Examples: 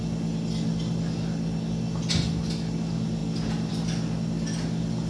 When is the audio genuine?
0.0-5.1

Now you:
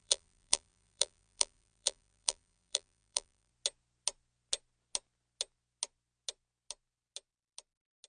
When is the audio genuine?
3.5-8.1